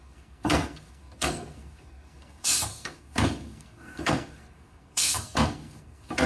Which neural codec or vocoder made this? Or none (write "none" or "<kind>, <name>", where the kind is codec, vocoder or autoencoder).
codec, SNAC